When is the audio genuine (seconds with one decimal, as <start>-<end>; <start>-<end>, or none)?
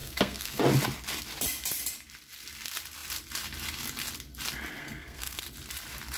0.6-4.8; 5.4-6.2